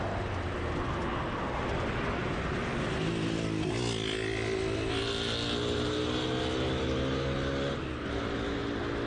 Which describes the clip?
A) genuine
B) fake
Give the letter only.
A